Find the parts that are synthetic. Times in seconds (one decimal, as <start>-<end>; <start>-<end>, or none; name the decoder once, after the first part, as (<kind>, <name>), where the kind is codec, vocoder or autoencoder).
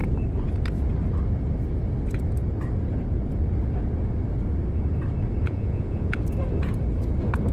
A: 5.4-6.2 (vocoder, Vocos)